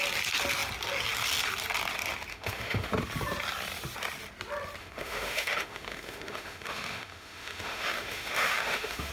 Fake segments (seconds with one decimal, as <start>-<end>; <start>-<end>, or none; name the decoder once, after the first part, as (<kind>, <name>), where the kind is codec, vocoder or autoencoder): 2.3-2.9 (autoencoder, DAC-VAE); 4.8-9.1